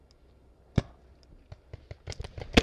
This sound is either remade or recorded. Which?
recorded